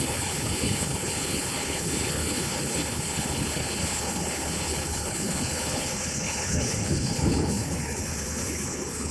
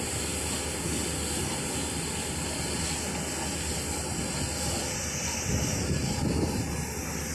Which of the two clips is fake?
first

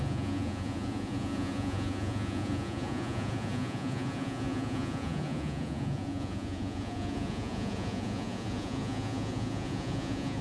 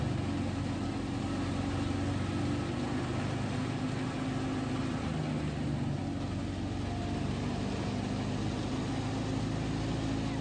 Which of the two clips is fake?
first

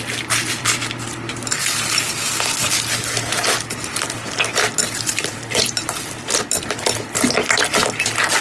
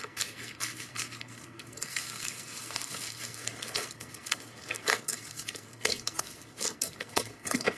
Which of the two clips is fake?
second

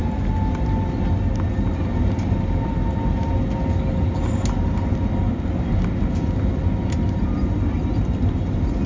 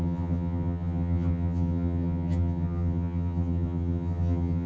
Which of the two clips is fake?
second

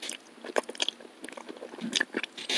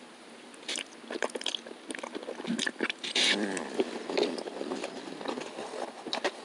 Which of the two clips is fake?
second